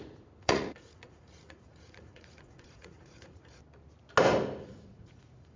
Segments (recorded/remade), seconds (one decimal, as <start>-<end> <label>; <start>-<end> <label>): 0.0-3.6 remade; 3.6-4.6 recorded; 4.6-5.6 remade

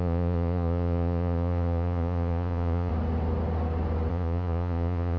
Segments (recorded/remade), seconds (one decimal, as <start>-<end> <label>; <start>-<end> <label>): 0.0-2.9 remade; 2.9-4.1 recorded; 4.1-5.2 remade

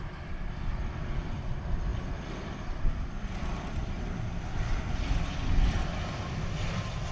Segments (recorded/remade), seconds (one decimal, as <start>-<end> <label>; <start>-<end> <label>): 0.0-7.1 recorded

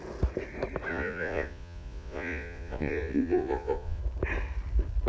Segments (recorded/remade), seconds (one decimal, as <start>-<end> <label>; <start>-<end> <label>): 0.0-0.9 recorded; 0.9-4.0 remade; 4.0-5.1 recorded

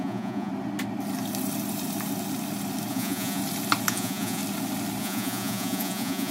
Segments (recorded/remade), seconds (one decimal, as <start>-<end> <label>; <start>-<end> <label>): 0.0-0.5 remade; 0.5-2.9 recorded; 2.9-3.4 remade; 3.4-3.9 recorded; 3.9-4.4 remade; 4.4-5.0 recorded; 5.0-6.3 remade

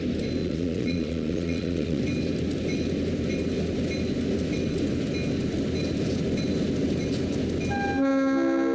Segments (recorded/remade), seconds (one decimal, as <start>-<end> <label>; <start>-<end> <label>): 0.0-0.4 recorded; 0.4-2.0 remade; 2.0-8.7 recorded